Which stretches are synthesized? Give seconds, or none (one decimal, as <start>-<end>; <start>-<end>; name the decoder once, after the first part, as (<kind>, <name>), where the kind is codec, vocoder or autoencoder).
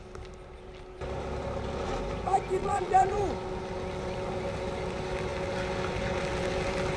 2.6-3.2 (vocoder, Vocos)